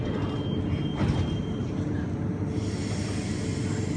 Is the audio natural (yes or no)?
yes